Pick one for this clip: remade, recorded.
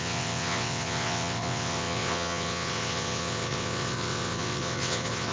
remade